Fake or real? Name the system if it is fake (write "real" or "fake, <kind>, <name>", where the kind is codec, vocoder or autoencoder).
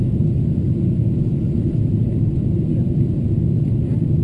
real